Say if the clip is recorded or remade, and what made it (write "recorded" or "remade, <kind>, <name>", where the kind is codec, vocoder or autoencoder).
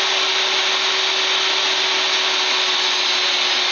recorded